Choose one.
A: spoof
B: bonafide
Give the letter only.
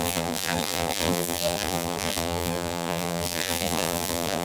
A